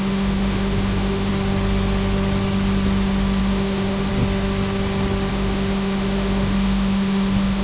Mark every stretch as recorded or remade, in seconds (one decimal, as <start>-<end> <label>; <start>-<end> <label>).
0.0-1.3 remade; 1.3-3.4 recorded; 3.4-4.1 remade; 4.1-5.3 recorded; 5.3-7.6 remade